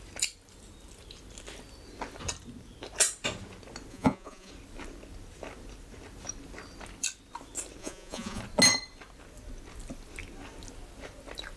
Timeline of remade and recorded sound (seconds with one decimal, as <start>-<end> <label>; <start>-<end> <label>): 0.0-3.9 recorded; 3.9-4.5 remade; 4.5-7.8 recorded; 7.8-8.4 remade; 8.4-11.6 recorded